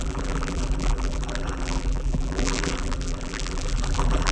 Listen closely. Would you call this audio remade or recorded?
remade